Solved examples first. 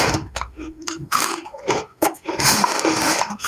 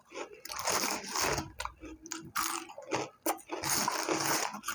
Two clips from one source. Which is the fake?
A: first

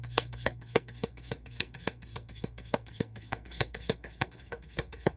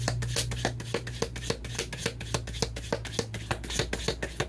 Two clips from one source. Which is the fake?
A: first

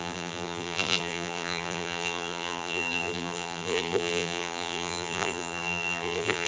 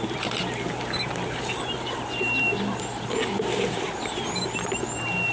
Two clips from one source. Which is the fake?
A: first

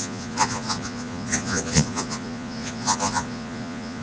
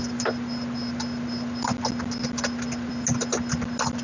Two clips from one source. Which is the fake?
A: first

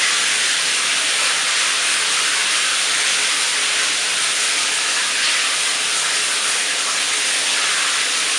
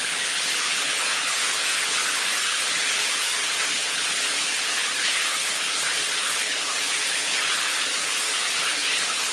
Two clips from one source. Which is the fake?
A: second